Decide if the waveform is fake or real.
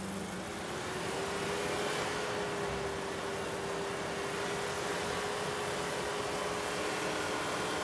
real